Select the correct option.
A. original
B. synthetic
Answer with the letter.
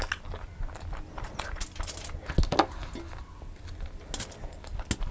A